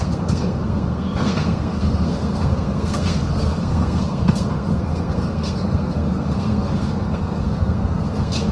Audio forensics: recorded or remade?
remade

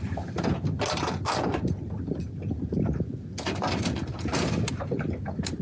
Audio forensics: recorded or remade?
recorded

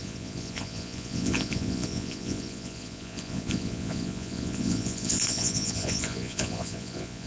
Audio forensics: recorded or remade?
remade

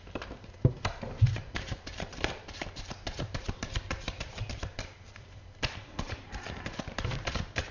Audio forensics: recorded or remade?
remade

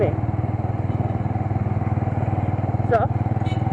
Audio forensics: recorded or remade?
recorded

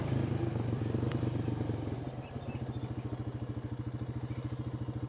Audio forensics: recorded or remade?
recorded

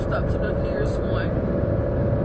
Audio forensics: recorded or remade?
recorded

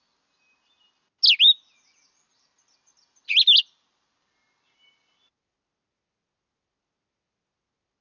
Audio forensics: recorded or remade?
recorded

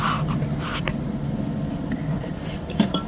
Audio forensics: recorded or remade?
recorded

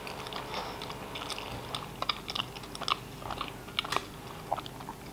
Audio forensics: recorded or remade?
recorded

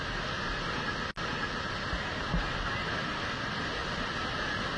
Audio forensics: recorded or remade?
recorded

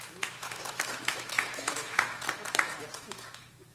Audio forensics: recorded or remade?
remade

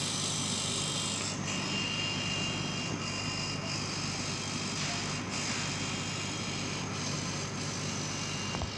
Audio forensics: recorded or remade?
recorded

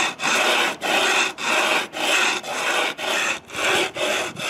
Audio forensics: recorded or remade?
remade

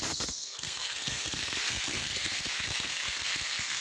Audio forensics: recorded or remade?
remade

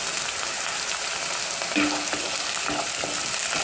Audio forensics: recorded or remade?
recorded